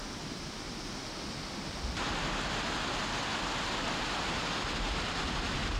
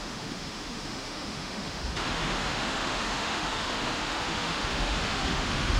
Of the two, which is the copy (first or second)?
second